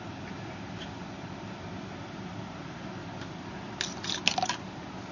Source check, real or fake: real